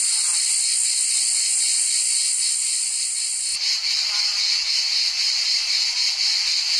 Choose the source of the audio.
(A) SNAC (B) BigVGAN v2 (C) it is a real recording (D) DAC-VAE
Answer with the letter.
C